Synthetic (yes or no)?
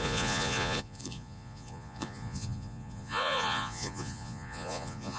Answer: yes